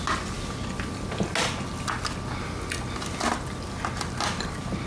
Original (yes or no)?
yes